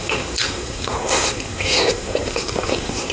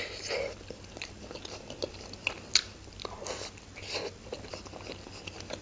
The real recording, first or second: second